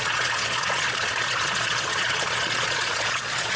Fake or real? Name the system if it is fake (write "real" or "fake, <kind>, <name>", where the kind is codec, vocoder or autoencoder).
fake, vocoder, Vocos